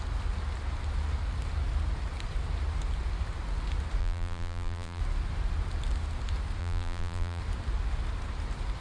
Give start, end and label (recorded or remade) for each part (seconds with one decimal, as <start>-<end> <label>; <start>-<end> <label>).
0.0-4.0 recorded; 4.0-5.0 remade; 5.0-6.6 recorded; 6.6-7.4 remade; 7.4-8.8 recorded